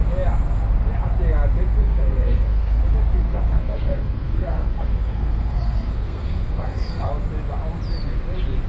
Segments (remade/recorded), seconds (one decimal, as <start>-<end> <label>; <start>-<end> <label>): 0.0-1.8 recorded; 1.8-2.8 remade; 2.8-3.2 recorded; 3.2-7.1 remade; 7.1-8.7 recorded